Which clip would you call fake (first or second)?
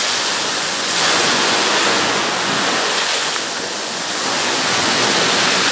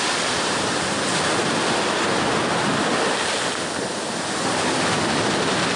first